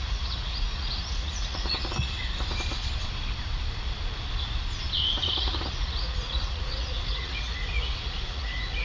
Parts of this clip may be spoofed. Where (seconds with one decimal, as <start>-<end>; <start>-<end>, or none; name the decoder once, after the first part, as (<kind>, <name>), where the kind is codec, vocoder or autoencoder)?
0.0-2.2 (vocoder, Vocos); 5.0-8.8